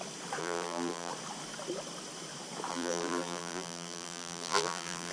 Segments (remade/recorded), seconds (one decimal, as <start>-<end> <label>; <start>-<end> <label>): 0.0-0.4 recorded; 0.4-1.1 remade; 1.1-2.7 recorded; 2.7-5.1 remade